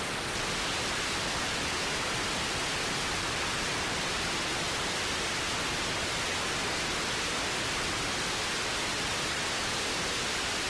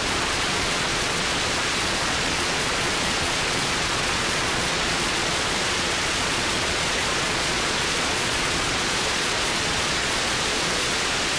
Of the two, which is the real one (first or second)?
first